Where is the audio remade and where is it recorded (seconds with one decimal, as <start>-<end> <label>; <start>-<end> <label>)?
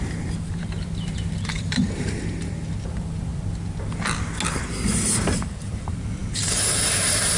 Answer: 0.0-3.3 remade; 3.3-4.9 recorded; 4.9-7.4 remade